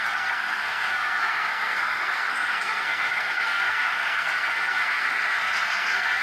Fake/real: fake